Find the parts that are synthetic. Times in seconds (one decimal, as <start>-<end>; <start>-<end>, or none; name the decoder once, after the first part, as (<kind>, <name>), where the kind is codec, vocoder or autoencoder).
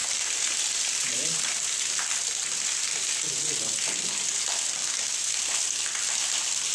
none